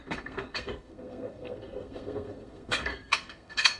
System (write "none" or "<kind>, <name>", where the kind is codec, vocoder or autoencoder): codec, SNAC